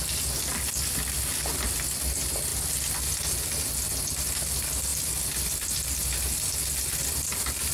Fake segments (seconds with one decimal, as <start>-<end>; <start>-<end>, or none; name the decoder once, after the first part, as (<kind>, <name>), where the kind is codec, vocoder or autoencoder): 2.5-3.0 (vocoder, BigVGAN v2)